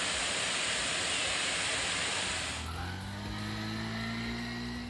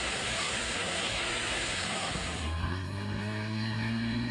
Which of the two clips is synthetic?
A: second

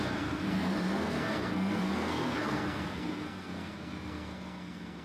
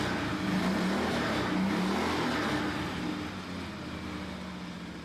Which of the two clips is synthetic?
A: first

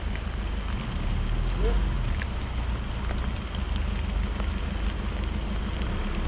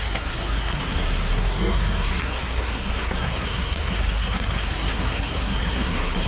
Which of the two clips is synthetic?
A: second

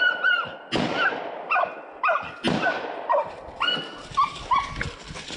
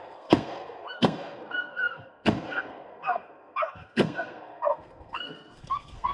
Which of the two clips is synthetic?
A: second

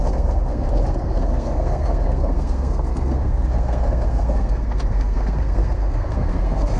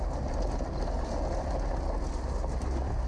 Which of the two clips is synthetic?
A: first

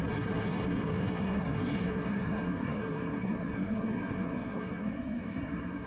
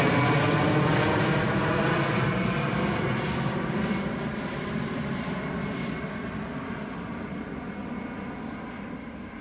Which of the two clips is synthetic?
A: first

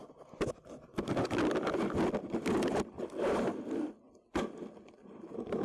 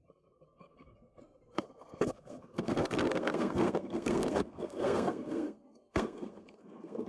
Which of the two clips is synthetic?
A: second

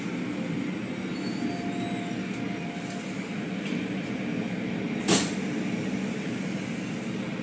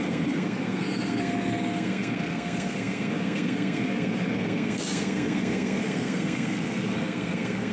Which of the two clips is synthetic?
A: second